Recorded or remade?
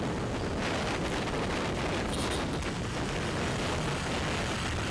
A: recorded